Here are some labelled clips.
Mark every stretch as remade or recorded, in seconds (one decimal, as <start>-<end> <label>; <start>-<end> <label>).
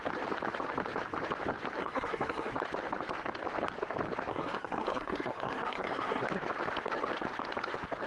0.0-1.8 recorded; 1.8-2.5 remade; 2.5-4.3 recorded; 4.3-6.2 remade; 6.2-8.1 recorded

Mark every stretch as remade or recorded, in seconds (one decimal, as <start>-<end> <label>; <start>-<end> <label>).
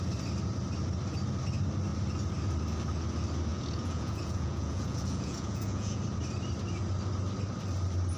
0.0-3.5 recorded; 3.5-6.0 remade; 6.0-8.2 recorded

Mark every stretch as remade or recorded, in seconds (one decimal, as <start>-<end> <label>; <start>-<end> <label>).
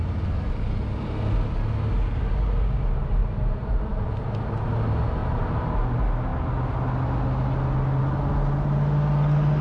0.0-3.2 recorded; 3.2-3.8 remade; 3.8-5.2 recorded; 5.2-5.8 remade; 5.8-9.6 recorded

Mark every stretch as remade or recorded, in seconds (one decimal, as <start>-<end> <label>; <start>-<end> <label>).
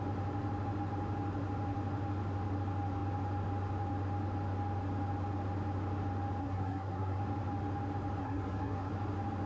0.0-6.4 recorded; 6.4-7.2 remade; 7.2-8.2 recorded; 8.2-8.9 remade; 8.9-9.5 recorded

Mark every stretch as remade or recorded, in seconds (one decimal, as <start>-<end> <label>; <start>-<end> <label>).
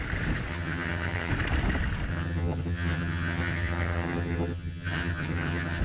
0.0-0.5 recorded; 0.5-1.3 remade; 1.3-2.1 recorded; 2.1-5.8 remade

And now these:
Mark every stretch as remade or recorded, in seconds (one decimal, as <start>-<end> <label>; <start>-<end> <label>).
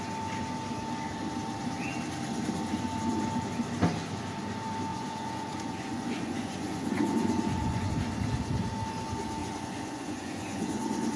0.0-4.9 recorded; 4.9-7.9 remade; 7.9-9.4 recorded; 9.4-11.2 remade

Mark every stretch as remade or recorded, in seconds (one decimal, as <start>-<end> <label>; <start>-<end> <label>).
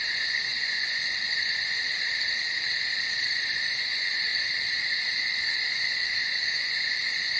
0.0-1.9 remade; 1.9-3.7 recorded; 3.7-4.3 remade; 4.3-5.4 recorded; 5.4-7.4 remade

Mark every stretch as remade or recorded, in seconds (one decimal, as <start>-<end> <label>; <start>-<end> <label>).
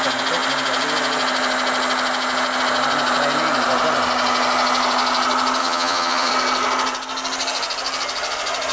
0.0-5.6 recorded; 5.6-6.3 remade; 6.3-8.7 recorded